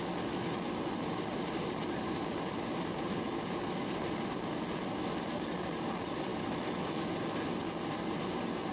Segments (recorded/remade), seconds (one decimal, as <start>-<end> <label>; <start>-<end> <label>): 0.0-6.3 recorded; 6.3-7.1 remade; 7.1-8.7 recorded